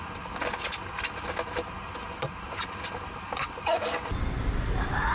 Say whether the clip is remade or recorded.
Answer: recorded